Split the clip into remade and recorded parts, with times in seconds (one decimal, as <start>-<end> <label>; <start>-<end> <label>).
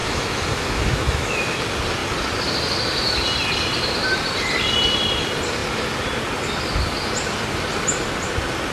0.0-1.6 remade; 1.6-8.7 recorded